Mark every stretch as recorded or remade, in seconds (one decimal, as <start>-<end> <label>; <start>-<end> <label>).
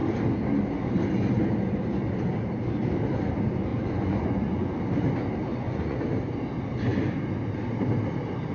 0.0-3.7 recorded; 3.7-4.8 remade; 4.8-5.5 recorded; 5.5-6.0 remade; 6.0-8.5 recorded